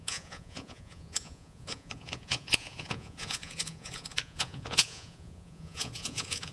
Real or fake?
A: fake